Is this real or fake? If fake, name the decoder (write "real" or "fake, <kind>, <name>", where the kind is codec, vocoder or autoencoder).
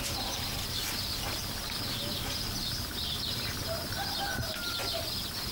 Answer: real